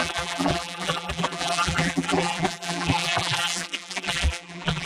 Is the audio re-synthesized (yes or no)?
yes